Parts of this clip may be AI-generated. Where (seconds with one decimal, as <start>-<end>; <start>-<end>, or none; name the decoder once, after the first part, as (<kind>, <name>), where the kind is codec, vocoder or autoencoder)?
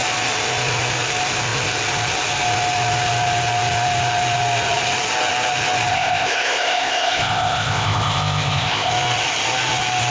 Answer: 5.9-8.9 (codec, ZipCodec)